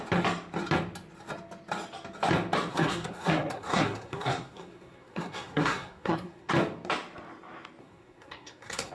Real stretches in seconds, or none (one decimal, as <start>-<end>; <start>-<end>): 0.0-2.7; 6.5-7.8

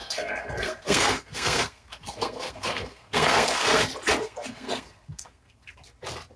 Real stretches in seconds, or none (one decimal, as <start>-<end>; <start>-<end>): 3.8-4.2; 5.7-6.4

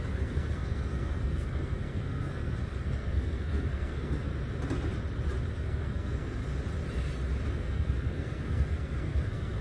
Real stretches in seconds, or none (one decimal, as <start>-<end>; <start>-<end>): 4.3-5.6; 6.4-7.6

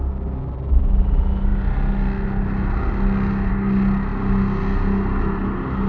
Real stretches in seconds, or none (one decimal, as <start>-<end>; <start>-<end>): 0.0-5.9

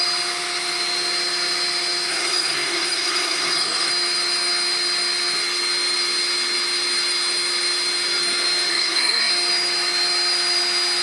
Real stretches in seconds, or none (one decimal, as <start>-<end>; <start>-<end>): 0.0-2.1; 3.9-8.7; 9.3-11.0